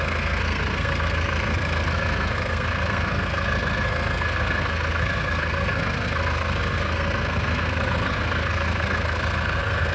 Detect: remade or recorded remade